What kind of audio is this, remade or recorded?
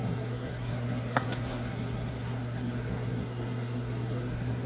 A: remade